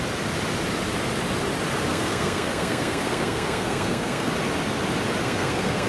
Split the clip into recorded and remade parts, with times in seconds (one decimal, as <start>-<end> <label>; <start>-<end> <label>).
0.0-1.9 recorded; 1.9-4.3 remade; 4.3-5.2 recorded; 5.2-5.9 remade